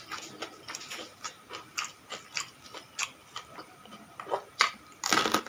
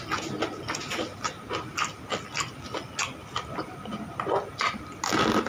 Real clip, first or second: second